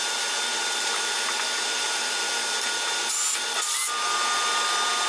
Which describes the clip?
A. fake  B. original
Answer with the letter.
B